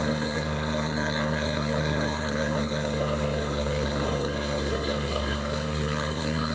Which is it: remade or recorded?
remade